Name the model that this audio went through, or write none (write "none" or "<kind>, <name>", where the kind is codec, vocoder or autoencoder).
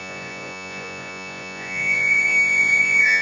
vocoder, Vocos